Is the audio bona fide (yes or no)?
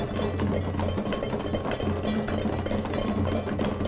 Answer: yes